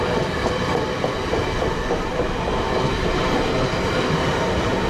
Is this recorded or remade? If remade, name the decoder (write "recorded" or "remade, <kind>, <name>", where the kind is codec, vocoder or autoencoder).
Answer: remade, vocoder, BigVGAN v2